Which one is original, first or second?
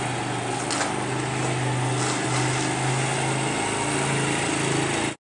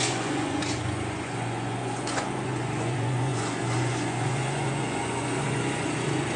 first